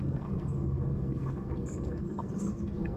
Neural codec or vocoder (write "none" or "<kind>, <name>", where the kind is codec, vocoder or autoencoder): codec, SNAC